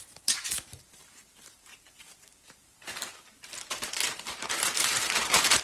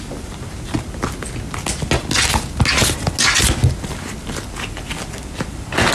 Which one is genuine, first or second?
second